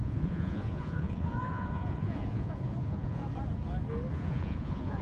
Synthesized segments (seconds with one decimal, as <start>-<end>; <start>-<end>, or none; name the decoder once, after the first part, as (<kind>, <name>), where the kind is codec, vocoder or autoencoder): 0.0-3.2 (vocoder, Vocos); 4.1-5.0